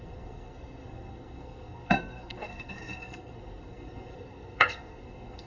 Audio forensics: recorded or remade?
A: remade